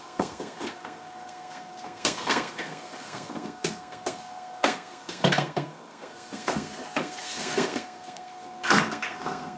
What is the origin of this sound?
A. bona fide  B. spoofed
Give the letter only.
B